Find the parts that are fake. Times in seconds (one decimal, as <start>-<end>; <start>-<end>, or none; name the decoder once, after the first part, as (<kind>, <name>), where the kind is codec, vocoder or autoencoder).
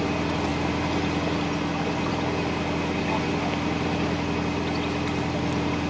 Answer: none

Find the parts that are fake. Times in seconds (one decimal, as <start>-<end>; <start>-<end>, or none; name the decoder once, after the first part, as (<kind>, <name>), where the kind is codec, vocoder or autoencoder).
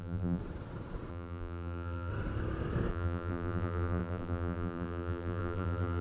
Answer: 0.0-0.4 (vocoder, BigVGAN v2); 1.1-2.1; 2.9-6.0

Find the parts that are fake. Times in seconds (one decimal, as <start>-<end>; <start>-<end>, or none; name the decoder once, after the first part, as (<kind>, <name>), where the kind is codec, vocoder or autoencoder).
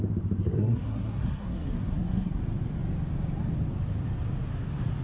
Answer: 0.4-2.4 (codec, SNAC)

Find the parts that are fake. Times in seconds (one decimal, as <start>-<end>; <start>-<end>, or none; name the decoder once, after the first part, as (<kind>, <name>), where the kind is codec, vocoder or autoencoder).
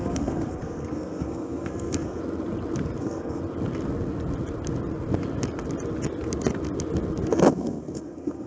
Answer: 0.0-2.2 (codec, SNAC); 3.0-3.4; 7.3-8.5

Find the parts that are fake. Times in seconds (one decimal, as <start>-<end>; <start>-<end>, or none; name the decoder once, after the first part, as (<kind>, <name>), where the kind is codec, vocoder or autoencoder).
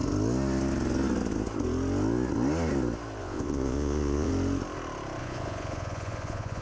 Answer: 3.2-4.3 (vocoder, Vocos); 5.2-6.6